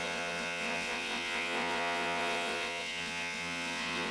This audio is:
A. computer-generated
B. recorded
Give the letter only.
A